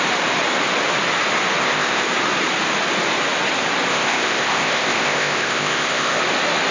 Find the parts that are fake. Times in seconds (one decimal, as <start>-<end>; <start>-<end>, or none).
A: 1.6-2.1; 3.9-6.2